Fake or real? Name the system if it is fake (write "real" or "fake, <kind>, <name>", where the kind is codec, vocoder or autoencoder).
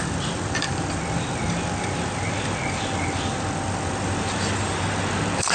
fake, vocoder, BigVGAN v2